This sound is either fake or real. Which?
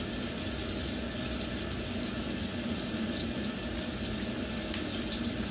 real